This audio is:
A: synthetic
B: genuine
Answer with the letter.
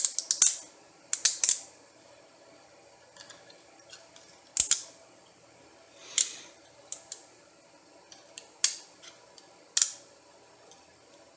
B